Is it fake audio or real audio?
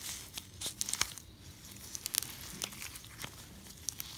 real